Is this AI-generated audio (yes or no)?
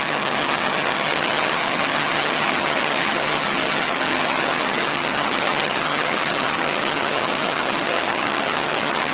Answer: yes